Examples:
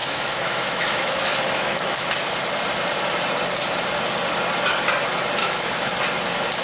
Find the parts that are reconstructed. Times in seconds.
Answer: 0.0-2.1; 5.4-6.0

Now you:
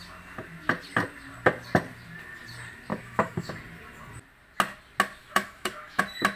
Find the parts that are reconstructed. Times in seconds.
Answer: 2.9-3.5; 5.2-6.0

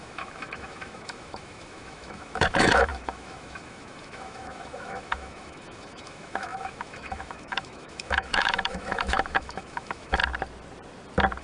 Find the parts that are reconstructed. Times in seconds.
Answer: 0.0-10.2

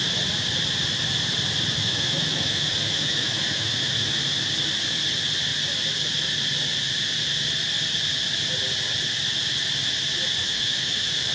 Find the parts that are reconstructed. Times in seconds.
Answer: 1.8-4.2; 10.4-11.3

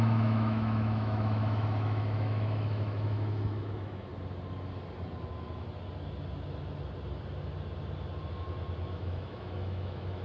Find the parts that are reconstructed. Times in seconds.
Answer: 0.0-4.1; 8.9-10.2

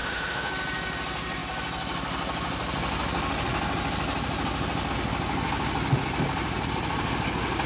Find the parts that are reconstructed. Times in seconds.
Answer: 0.0-0.5